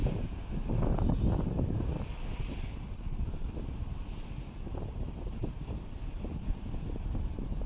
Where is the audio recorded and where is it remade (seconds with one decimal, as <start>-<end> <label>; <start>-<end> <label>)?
0.0-0.5 remade; 0.5-7.7 recorded